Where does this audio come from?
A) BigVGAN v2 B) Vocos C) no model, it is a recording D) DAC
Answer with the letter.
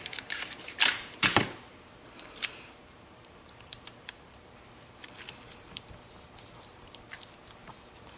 A